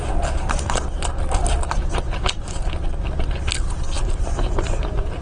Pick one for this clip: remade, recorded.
recorded